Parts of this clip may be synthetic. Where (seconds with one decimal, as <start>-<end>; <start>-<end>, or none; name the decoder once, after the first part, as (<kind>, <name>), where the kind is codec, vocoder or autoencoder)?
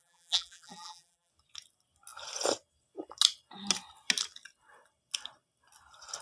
0.0-1.3 (vocoder, BigVGAN v2)